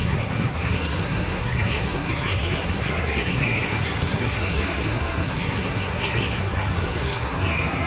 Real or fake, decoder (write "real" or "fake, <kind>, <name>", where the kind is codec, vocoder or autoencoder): fake, codec, SNAC